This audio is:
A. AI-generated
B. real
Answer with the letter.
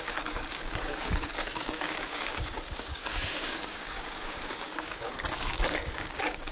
A